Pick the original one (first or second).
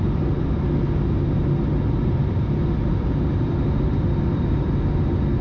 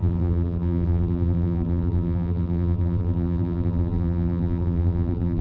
first